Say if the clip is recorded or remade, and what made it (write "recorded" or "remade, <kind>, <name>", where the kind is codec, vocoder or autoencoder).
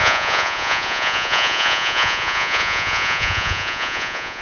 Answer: remade, vocoder, Vocos